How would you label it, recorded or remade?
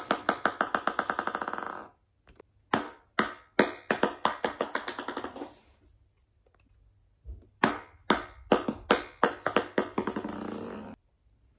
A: recorded